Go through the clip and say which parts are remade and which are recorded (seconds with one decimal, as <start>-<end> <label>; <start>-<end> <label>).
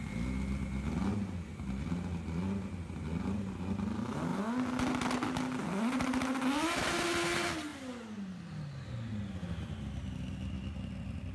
0.0-11.3 recorded